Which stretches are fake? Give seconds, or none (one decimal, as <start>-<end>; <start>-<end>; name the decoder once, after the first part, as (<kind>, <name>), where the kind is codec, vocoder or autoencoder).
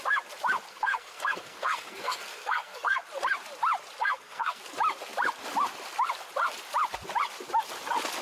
0.7-3.0 (codec, SNAC); 4.0-4.6